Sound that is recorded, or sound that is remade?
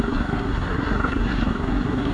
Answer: remade